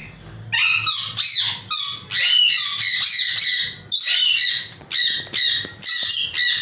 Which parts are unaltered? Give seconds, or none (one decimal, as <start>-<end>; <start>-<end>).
0.0-6.6